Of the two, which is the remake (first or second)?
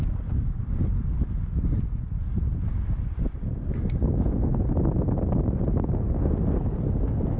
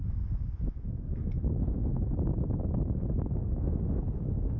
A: second